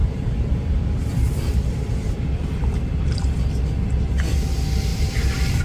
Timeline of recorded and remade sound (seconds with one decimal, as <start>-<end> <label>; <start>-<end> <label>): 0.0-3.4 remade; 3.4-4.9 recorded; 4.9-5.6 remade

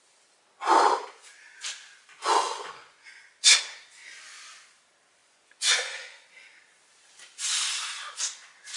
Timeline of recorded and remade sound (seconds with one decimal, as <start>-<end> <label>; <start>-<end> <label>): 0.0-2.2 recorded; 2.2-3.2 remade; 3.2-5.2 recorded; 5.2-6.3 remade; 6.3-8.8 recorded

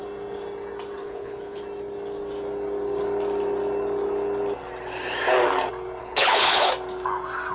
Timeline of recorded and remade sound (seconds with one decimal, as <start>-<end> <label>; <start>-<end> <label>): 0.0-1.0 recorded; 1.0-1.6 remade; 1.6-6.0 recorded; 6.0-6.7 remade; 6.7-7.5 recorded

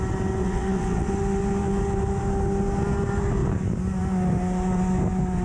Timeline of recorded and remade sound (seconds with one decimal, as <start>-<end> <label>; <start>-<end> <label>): 0.0-0.4 recorded; 0.4-1.1 remade; 1.1-5.4 recorded

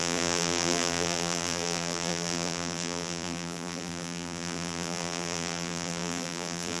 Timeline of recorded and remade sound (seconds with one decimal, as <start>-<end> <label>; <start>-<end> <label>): 0.0-6.8 remade

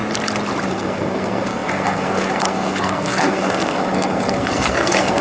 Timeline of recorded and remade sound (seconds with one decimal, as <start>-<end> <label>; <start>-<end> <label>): 0.0-0.7 recorded; 0.7-5.2 remade

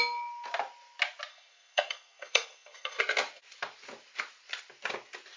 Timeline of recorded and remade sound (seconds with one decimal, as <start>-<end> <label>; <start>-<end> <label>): 0.0-1.3 recorded; 1.3-3.0 remade; 3.0-5.4 recorded